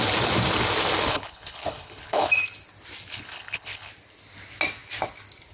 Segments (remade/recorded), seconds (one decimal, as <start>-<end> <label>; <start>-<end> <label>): 0.0-1.1 recorded; 1.1-2.3 remade; 2.3-3.1 recorded; 3.1-3.9 remade; 3.9-5.5 recorded